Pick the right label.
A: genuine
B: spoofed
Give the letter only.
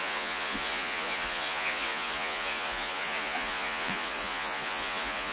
B